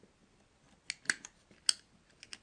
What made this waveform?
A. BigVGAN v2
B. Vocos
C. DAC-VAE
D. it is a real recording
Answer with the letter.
D